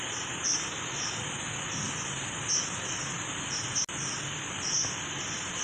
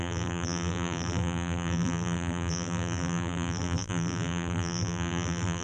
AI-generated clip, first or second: second